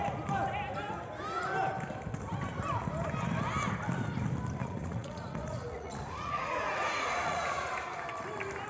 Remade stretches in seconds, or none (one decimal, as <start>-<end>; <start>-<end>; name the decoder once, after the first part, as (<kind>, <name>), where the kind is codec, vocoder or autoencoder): 4.6-7.7 (vocoder, Vocos)